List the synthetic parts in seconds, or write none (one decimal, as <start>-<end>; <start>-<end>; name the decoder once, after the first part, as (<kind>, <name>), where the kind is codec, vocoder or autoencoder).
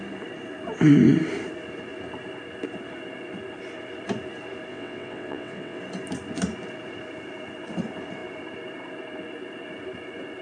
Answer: 4.7-5.8 (vocoder, WaveNeXt)